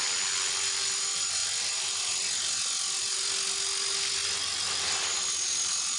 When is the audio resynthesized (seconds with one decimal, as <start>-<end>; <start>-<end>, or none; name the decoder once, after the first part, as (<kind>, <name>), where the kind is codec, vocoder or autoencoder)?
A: none